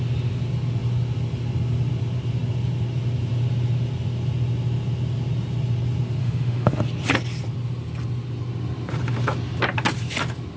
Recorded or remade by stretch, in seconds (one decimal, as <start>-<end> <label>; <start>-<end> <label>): 0.0-6.2 recorded; 6.2-6.8 remade; 6.8-10.6 recorded